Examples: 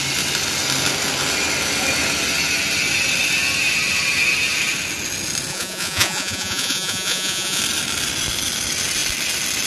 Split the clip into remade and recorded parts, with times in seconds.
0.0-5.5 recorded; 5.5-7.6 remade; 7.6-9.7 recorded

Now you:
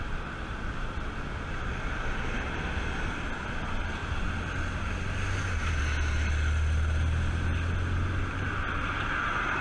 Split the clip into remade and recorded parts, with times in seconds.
0.0-9.6 recorded

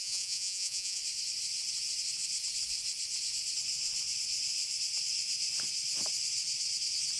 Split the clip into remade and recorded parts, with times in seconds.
0.0-1.0 remade; 1.0-7.2 recorded

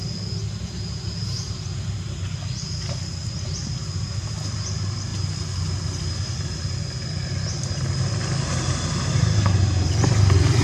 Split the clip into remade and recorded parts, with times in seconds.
0.0-10.6 recorded

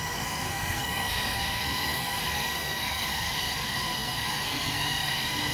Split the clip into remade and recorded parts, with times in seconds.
0.0-5.5 remade